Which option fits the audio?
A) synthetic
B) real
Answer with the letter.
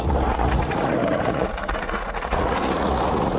A